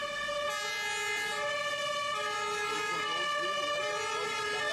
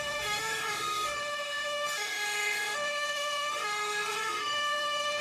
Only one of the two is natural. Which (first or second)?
first